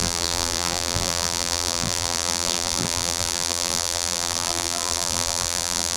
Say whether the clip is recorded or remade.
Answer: remade